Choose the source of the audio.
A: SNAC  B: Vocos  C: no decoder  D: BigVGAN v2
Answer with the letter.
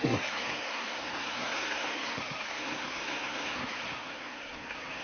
A